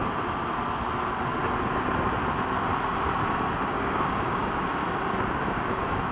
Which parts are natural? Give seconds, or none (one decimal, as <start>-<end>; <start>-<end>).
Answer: 0.0-3.7; 4.8-5.4

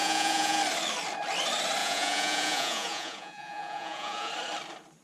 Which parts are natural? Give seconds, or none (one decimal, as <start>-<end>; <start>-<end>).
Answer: 0.6-1.8; 4.3-5.0

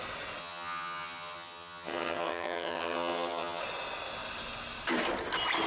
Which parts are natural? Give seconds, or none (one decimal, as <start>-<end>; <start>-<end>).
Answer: 0.0-0.4; 3.6-5.7